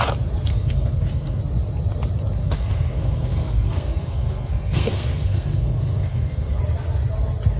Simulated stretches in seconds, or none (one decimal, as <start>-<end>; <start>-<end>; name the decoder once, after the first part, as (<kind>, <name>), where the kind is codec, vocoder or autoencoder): 0.5-1.4 (codec, SNAC); 2.4-6.6